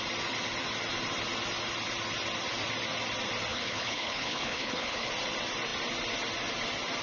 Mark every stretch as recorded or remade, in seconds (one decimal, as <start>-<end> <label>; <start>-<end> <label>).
0.0-3.5 recorded; 3.5-5.1 remade; 5.1-7.0 recorded